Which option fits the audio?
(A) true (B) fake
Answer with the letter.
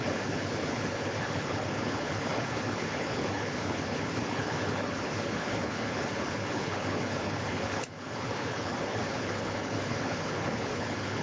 B